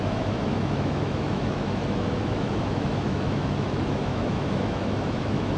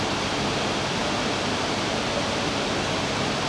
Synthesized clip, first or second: first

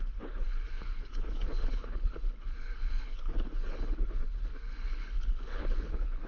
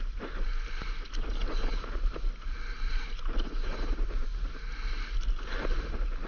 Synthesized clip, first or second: first